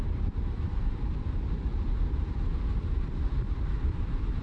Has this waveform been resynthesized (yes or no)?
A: no